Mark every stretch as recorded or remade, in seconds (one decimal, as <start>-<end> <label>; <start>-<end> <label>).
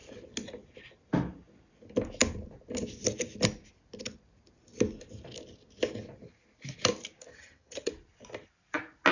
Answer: 0.0-7.3 recorded; 7.3-7.9 remade; 7.9-9.1 recorded